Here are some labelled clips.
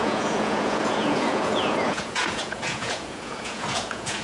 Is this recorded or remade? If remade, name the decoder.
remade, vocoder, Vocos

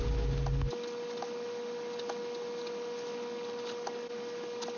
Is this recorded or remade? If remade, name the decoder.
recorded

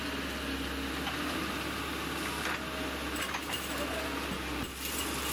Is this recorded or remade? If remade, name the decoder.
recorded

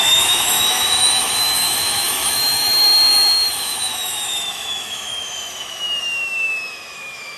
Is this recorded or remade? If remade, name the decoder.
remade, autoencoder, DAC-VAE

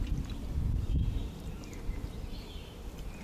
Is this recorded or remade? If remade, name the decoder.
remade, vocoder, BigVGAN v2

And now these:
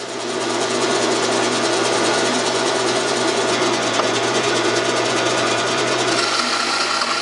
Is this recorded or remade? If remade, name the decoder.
remade, vocoder, Vocos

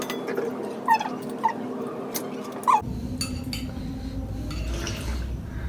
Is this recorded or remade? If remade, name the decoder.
recorded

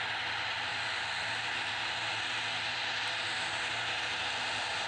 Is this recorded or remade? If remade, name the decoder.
recorded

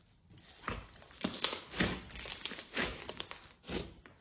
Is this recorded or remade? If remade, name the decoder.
recorded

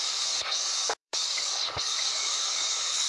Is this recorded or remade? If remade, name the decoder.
remade, codec, DAC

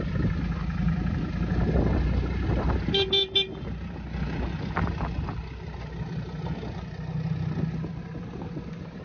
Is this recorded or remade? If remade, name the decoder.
recorded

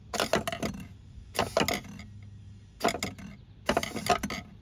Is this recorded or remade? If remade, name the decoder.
recorded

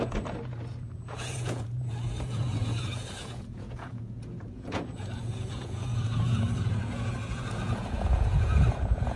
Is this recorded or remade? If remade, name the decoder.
remade, vocoder, Vocos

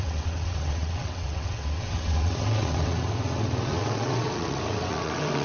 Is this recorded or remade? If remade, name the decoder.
remade, vocoder, WaveNeXt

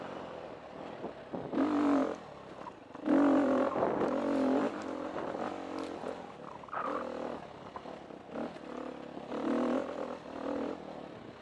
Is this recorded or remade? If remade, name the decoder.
recorded